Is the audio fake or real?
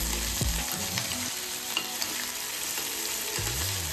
real